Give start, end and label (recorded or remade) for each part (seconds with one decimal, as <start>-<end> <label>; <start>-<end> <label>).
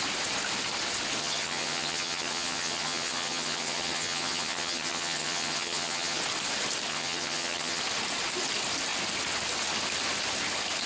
0.0-1.2 recorded; 1.2-6.2 remade; 6.2-6.9 recorded; 6.9-7.8 remade; 7.8-10.9 recorded